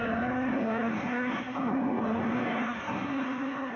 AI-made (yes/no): yes